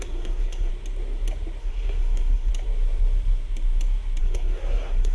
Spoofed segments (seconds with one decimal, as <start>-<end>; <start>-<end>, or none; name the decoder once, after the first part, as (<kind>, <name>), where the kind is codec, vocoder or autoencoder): 0.0-0.7 (codec, SNAC); 1.6-2.5; 4.2-5.1